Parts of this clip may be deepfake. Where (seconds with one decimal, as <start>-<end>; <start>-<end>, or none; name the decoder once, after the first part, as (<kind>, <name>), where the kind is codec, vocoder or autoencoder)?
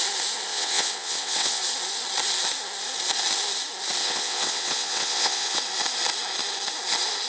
0.5-1.6 (vocoder, WaveNeXt); 4.0-5.6